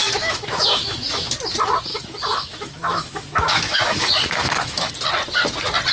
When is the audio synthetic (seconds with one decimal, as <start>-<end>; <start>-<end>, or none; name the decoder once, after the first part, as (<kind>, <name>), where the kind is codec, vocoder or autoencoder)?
0.0-1.3 (autoencoder, DAC-VAE); 1.9-4.9